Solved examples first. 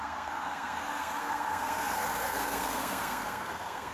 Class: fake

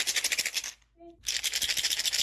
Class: real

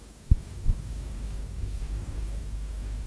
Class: fake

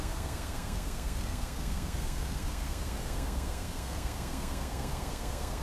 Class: fake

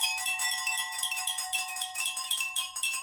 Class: fake